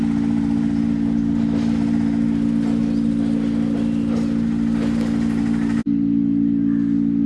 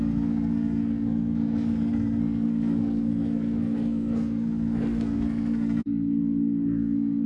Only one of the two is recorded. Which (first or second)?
first